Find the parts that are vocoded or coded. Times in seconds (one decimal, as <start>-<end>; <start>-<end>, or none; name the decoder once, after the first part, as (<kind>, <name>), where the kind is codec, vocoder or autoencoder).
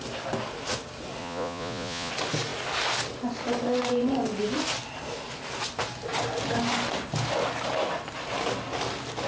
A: 1.2-2.1 (vocoder, Vocos)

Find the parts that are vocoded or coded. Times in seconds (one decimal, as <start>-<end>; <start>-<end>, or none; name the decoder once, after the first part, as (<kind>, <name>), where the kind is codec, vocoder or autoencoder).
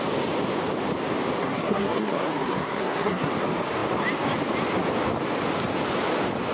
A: 1.4-3.3 (codec, SNAC)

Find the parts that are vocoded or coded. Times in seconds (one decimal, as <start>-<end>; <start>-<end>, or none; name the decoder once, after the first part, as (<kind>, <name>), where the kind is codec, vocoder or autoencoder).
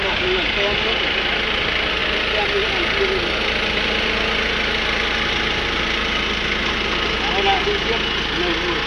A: none